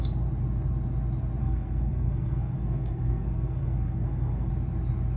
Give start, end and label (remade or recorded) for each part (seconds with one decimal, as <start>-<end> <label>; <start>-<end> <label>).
0.0-1.4 recorded; 1.4-4.5 remade; 4.5-5.2 recorded